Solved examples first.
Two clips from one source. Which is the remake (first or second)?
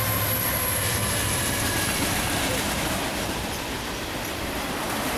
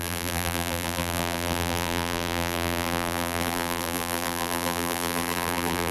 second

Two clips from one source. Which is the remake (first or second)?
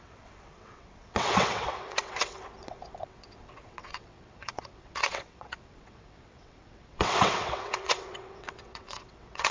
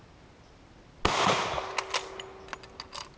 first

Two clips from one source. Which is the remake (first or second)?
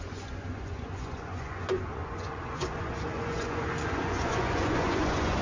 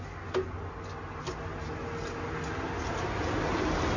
first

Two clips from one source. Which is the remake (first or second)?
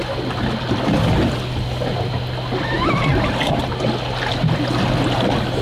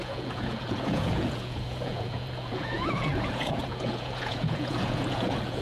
second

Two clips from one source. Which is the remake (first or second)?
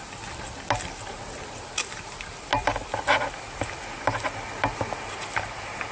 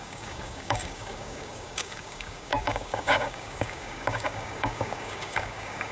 second